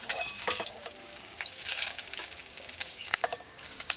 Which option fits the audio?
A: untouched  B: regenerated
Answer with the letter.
B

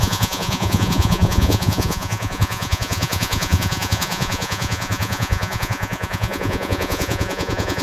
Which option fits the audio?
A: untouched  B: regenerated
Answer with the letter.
B